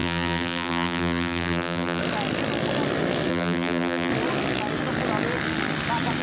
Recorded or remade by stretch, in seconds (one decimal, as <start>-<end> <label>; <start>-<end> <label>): 0.0-2.0 remade; 2.0-3.3 recorded; 3.3-4.1 remade; 4.1-6.2 recorded